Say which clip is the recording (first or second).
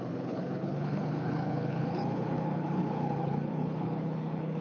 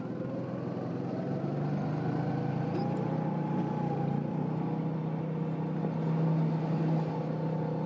second